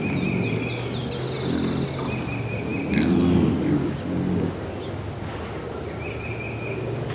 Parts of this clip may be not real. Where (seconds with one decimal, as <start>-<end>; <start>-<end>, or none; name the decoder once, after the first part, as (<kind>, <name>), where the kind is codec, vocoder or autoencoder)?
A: none